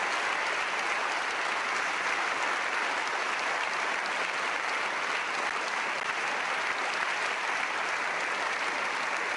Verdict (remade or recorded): recorded